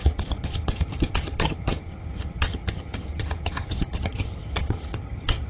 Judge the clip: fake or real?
fake